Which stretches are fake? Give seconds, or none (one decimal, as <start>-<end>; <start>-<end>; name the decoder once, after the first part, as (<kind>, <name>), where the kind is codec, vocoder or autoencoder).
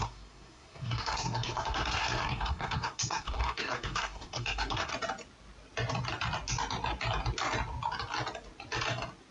0.0-4.9 (codec, SNAC)